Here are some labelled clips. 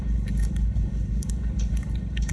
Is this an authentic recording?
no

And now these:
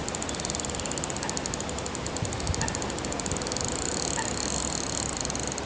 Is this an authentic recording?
yes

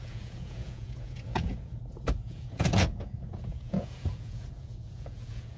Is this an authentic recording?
no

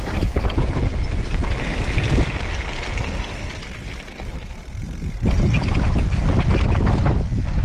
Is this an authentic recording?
yes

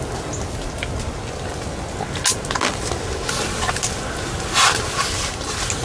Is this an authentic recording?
yes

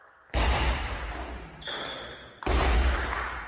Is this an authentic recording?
yes